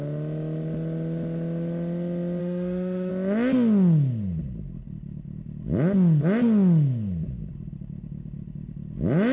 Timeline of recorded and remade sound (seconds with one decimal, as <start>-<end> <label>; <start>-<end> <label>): 0.0-2.4 recorded; 2.4-3.1 remade; 3.1-9.3 recorded

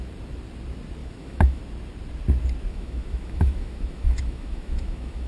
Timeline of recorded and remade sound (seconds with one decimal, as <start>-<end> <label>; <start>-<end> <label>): 0.0-1.0 recorded; 1.0-1.6 remade; 1.6-2.7 recorded; 2.7-5.3 remade

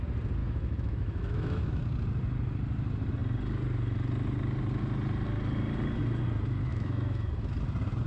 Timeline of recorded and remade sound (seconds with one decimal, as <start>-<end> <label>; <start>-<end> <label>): 0.0-0.4 recorded; 0.4-1.8 remade; 1.8-6.7 recorded; 6.7-7.3 remade; 7.3-8.1 recorded